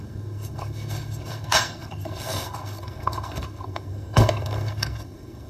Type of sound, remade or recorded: remade